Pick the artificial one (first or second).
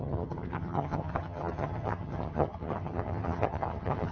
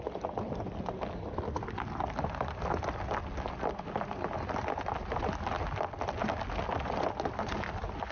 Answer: first